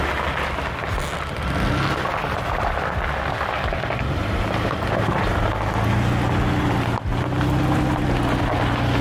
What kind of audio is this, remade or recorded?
recorded